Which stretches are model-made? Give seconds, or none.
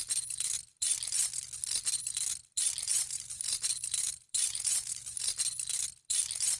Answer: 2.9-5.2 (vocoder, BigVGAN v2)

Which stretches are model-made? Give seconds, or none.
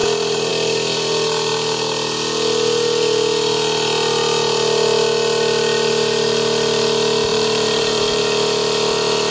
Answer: 7.3-8.2 (vocoder, BigVGAN v2)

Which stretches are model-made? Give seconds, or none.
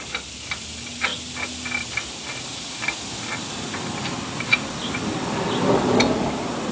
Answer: none